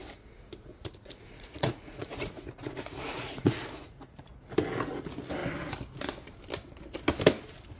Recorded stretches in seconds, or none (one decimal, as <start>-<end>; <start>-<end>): 0.0-0.7; 4.3-7.8